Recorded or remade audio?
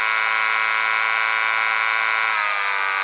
recorded